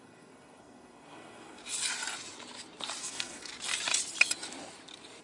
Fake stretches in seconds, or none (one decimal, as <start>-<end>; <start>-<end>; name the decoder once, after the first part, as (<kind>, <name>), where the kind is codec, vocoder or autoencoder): 0.0-1.6 (codec, SNAC); 3.0-3.5

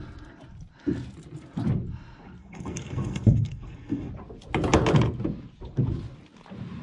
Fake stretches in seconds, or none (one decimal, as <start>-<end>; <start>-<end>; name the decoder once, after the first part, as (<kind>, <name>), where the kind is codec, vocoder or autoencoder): 2.4-4.1 (codec, SNAC)